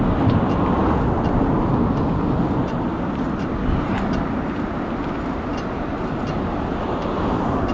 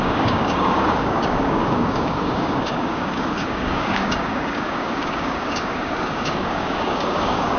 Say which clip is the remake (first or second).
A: second